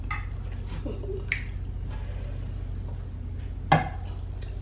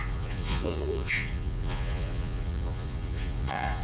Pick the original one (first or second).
first